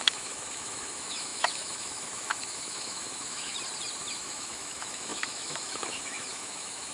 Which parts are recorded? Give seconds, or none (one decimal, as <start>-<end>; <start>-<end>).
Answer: 3.5-4.1